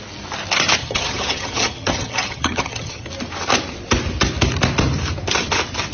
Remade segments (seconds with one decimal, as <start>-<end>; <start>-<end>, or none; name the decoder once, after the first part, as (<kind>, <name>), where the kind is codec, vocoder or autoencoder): 0.8-3.1 (vocoder, HiFi-GAN)